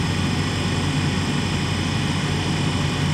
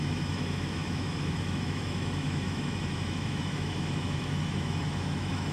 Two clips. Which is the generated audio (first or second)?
second